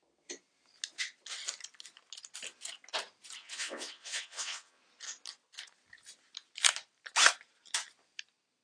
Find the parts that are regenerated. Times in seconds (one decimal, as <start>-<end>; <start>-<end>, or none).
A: 3.4-4.8